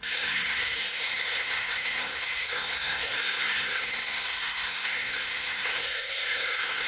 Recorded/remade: remade